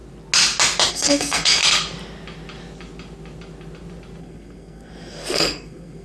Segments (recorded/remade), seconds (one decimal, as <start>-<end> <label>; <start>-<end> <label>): 0.0-0.9 recorded; 0.9-1.6 remade; 1.6-4.2 recorded; 4.2-6.0 remade